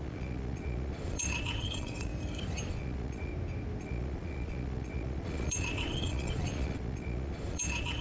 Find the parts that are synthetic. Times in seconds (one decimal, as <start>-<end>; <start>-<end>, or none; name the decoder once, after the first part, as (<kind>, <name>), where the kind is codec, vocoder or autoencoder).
0.0-2.1 (vocoder, Vocos); 2.7-3.3; 3.8-8.0